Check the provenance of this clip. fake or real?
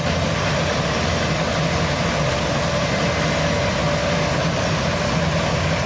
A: real